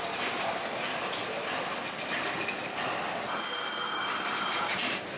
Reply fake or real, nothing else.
real